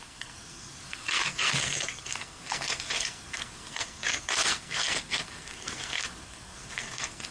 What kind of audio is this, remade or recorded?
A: remade